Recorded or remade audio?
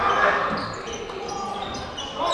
recorded